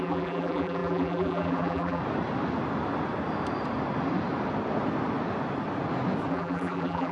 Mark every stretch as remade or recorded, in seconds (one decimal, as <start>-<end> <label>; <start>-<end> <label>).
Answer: 0.0-2.0 remade; 2.0-6.3 recorded; 6.3-7.1 remade